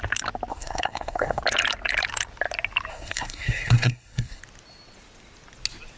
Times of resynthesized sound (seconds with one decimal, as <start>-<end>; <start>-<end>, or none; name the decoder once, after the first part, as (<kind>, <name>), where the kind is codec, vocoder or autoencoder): 0.5-1.4 (codec, SNAC); 2.9-4.4